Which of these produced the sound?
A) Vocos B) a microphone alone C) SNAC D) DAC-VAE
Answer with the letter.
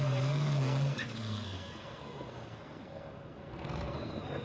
C